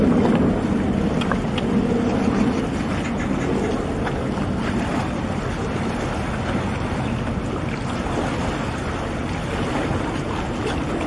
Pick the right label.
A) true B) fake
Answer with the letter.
A